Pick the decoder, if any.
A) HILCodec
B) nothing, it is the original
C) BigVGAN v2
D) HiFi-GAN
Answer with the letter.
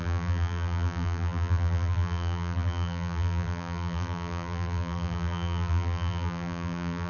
C